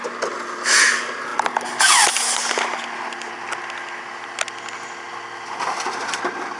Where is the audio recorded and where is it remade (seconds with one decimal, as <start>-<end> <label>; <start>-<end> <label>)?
0.0-6.6 recorded